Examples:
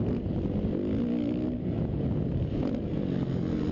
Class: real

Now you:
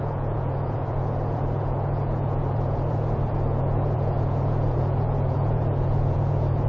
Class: fake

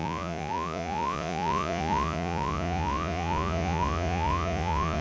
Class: fake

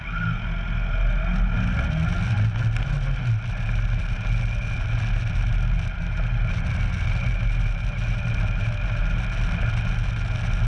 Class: real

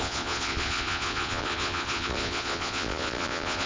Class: fake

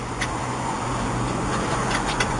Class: fake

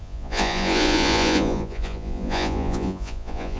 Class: fake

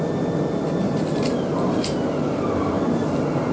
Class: real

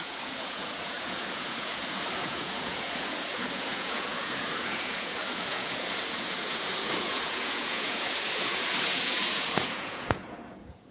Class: fake